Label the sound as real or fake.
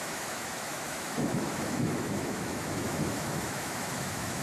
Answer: fake